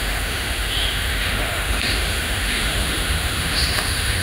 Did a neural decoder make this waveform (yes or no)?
yes